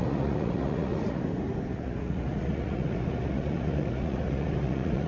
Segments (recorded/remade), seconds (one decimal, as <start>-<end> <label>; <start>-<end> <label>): 0.0-1.2 remade; 1.2-1.7 recorded; 1.7-5.1 remade